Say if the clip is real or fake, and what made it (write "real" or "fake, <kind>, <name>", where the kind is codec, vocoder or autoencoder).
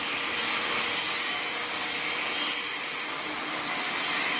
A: real